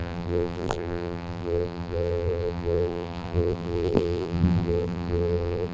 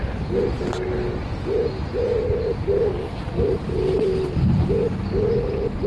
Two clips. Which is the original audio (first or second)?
second